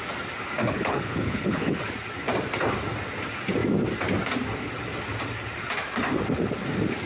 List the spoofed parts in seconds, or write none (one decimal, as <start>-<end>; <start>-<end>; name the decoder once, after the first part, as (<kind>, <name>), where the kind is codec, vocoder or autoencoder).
0.6-1.8 (codec, HILCodec)